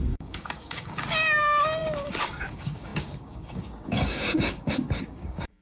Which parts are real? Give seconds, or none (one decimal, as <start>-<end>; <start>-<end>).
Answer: none